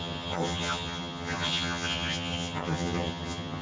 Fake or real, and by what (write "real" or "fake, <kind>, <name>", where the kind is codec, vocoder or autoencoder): fake, vocoder, HiFi-GAN